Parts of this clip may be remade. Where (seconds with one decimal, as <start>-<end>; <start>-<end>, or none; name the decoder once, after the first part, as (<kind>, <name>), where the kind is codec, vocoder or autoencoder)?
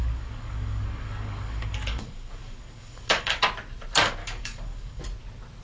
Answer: 0.0-3.4 (codec, DAC); 4.2-5.0